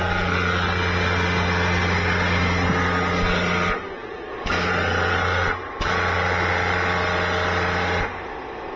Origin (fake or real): real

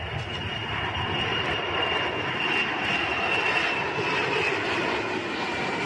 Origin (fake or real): real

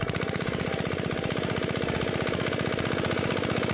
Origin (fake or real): real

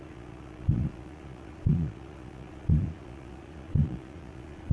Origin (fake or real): fake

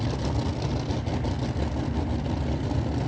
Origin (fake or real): real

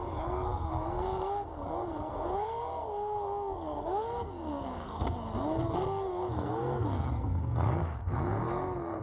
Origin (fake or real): fake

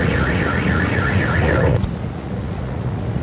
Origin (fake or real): fake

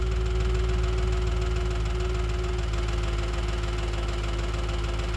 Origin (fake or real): real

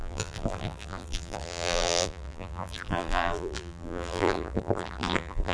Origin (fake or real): fake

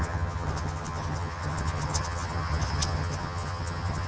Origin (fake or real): fake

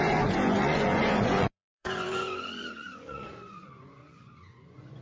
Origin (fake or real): fake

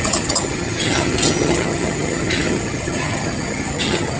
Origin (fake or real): fake